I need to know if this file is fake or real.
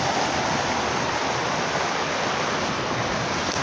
real